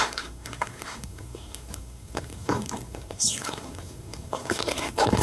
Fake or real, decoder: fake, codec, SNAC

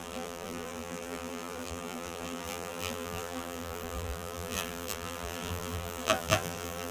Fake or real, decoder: fake, vocoder, BigVGAN v2